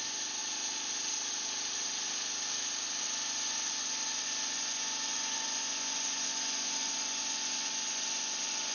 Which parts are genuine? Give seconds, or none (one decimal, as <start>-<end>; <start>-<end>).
0.4-3.0